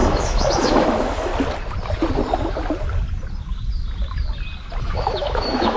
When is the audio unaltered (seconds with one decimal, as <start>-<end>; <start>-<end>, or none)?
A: 1.3-4.8

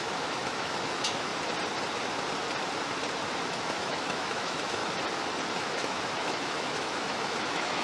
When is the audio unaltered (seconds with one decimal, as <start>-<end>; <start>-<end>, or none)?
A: 1.3-3.5; 4.8-5.5